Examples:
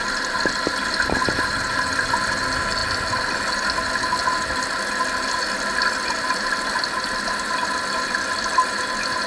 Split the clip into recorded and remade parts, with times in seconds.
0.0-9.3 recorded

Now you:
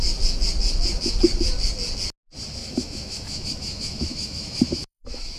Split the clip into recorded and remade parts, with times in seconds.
0.0-2.6 recorded; 2.6-5.4 remade

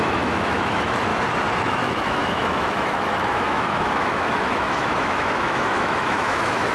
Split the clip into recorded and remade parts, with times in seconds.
0.0-1.1 remade; 1.1-1.6 recorded; 1.6-6.7 remade

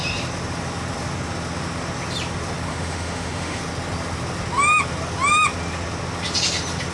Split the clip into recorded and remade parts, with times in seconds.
0.0-2.7 recorded; 2.7-3.6 remade; 3.6-6.9 recorded

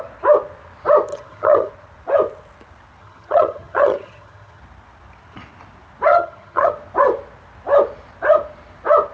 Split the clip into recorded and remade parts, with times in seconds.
0.0-1.1 recorded; 1.1-1.7 remade; 1.7-3.0 recorded; 3.0-4.6 remade; 4.6-6.1 recorded; 6.1-6.7 remade; 6.7-9.1 recorded

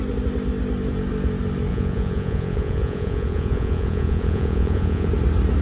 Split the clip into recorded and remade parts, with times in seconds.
0.0-1.7 recorded; 1.7-5.1 remade; 5.1-5.6 recorded

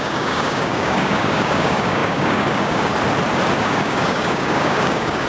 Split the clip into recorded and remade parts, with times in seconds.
0.0-2.9 remade; 2.9-3.6 recorded; 3.6-5.3 remade

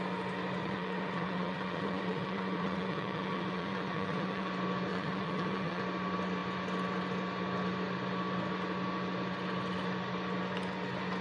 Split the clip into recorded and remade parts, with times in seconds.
0.0-0.6 recorded; 0.6-4.5 remade; 4.5-4.9 recorded; 4.9-5.8 remade; 5.8-11.2 recorded